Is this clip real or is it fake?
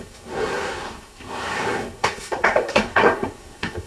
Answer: fake